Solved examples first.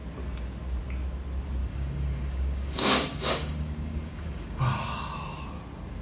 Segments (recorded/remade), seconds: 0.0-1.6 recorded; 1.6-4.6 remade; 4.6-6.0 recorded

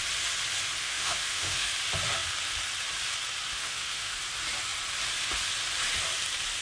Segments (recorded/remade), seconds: 0.0-0.8 recorded; 0.8-1.7 remade; 1.7-3.5 recorded; 3.5-4.2 remade; 4.2-6.6 recorded

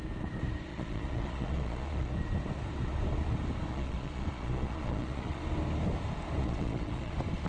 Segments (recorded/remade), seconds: 0.0-0.7 recorded; 0.7-2.1 remade; 2.1-3.7 recorded; 3.7-5.4 remade; 5.4-6.4 recorded; 6.4-7.1 remade; 7.1-7.5 recorded

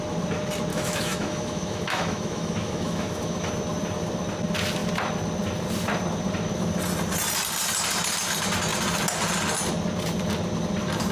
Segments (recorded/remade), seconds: 0.0-0.7 recorded; 0.7-3.5 remade; 3.5-11.1 recorded

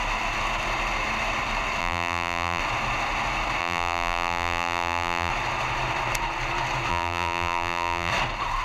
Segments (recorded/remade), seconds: 0.0-1.8 recorded; 1.8-2.6 remade; 2.6-3.6 recorded; 3.6-5.3 remade; 5.3-6.9 recorded; 6.9-8.1 remade; 8.1-8.6 recorded

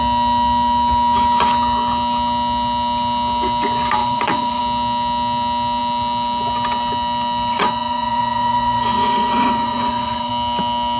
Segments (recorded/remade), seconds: 0.0-4.0 recorded; 4.0-4.6 remade; 4.6-7.5 recorded; 7.5-10.3 remade; 10.3-11.0 recorded

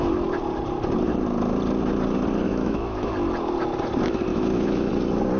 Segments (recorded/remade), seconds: 0.0-2.5 recorded; 2.5-3.1 remade; 3.1-4.3 recorded; 4.3-4.9 remade; 4.9-5.4 recorded

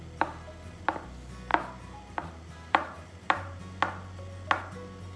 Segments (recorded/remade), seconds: 0.0-1.5 recorded; 1.5-3.6 remade; 3.6-5.2 recorded